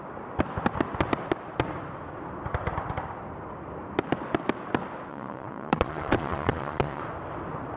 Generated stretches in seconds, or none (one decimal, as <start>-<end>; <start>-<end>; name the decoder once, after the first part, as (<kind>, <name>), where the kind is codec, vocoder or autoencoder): 5.1-7.0 (vocoder, Vocos)